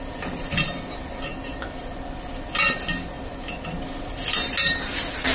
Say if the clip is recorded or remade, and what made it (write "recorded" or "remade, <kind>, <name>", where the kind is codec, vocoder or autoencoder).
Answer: recorded